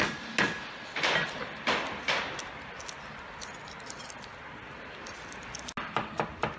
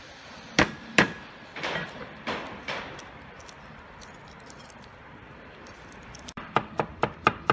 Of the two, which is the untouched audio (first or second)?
first